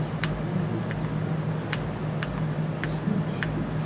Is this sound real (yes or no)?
yes